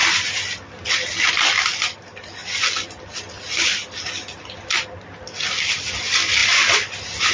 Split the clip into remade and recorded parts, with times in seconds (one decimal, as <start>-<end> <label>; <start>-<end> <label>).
0.0-7.3 recorded